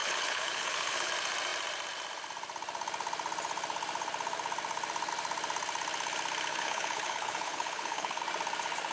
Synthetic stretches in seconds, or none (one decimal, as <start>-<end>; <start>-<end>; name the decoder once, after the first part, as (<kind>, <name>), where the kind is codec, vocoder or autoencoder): 0.0-1.1 (codec, HILCodec); 6.5-8.2